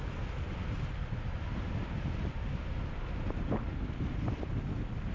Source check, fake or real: real